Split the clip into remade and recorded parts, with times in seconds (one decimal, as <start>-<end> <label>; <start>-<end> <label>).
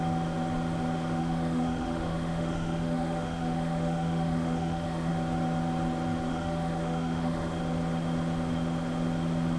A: 0.0-1.2 recorded; 1.2-5.1 remade; 5.1-6.3 recorded; 6.3-7.6 remade; 7.6-9.6 recorded